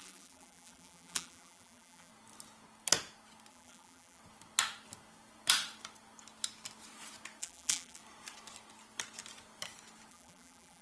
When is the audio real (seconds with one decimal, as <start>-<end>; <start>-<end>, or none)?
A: 2.1-3.5; 4.2-7.4; 8.0-10.1